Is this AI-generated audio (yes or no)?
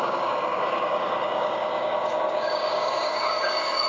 yes